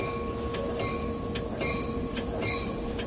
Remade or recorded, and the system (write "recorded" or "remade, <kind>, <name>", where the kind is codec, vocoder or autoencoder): recorded